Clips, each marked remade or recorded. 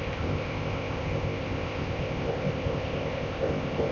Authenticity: remade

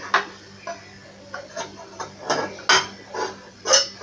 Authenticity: recorded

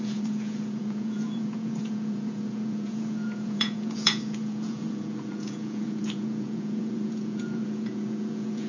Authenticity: remade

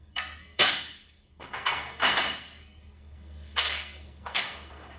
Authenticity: remade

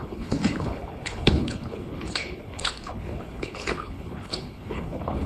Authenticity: remade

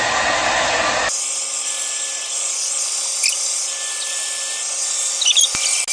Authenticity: recorded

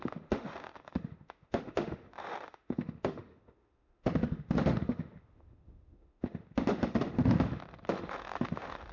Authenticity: remade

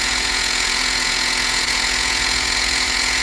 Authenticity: remade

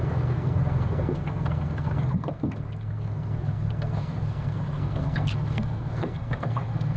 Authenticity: remade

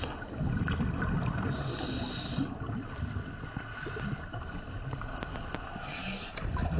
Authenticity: recorded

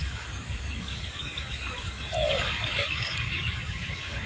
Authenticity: remade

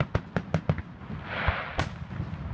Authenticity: recorded